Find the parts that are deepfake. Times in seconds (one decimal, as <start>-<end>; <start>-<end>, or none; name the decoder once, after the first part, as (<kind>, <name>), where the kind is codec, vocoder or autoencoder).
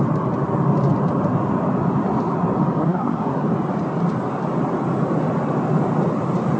2.8-3.4 (codec, SNAC)